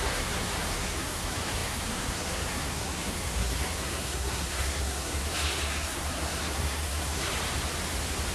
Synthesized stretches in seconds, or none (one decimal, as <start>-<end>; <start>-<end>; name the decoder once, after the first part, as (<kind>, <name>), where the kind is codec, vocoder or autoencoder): 0.0-7.3 (codec, SNAC)